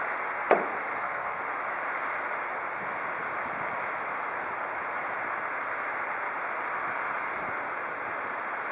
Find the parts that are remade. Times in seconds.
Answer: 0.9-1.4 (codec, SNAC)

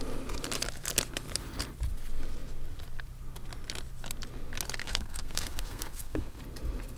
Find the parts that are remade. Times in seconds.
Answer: 4.8-6.4 (codec, SNAC)